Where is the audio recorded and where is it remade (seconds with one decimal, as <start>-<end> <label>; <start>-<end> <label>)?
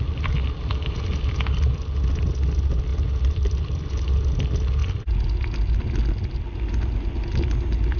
0.0-8.0 recorded